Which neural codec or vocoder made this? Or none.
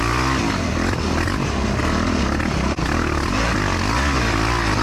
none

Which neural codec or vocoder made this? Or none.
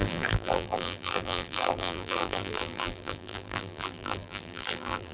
vocoder, BigVGAN v2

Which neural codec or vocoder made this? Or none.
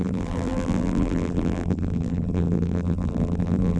vocoder, BigVGAN v2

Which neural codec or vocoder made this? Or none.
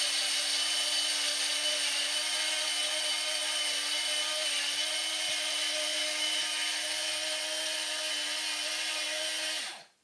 vocoder, BigVGAN v2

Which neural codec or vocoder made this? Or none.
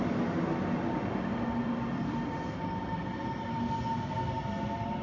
none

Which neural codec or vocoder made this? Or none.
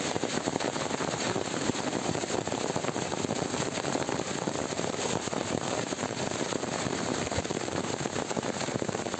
vocoder, BigVGAN v2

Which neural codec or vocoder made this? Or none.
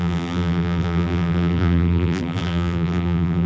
vocoder, BigVGAN v2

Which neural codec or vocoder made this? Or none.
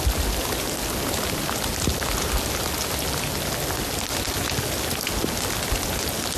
none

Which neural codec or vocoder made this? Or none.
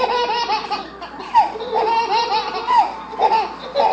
none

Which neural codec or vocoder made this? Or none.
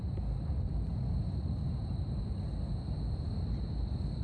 none